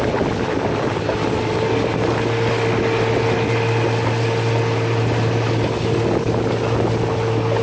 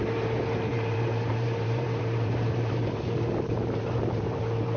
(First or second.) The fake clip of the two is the second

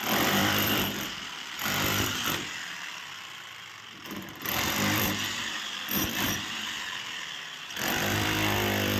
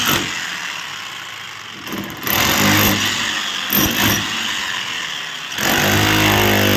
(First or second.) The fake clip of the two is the first